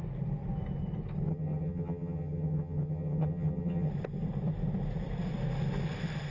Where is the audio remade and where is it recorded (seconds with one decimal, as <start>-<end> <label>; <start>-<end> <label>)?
0.0-1.3 recorded; 1.3-3.9 remade; 3.9-6.3 recorded